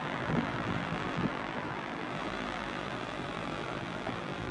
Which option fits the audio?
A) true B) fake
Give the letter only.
B